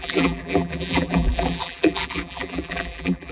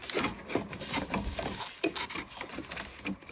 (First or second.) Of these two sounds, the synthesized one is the first